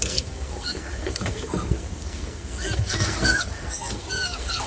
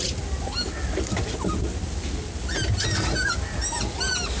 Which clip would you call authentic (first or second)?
second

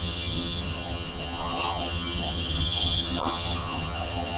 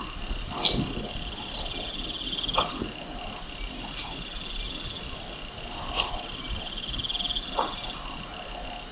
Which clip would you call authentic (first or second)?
second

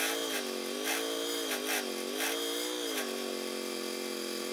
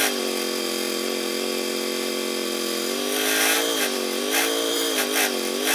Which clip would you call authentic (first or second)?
first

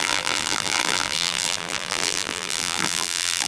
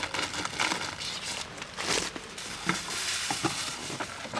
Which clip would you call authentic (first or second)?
second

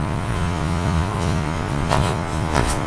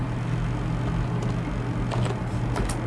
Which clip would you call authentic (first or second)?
second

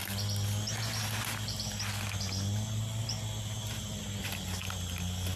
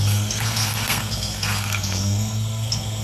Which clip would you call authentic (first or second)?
first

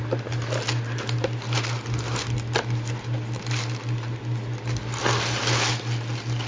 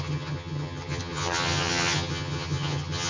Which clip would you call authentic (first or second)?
first